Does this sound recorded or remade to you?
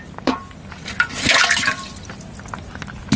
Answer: recorded